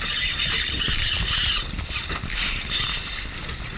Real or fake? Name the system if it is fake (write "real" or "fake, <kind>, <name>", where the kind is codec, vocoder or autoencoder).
real